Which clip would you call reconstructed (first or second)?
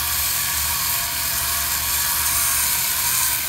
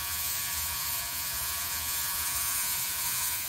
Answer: second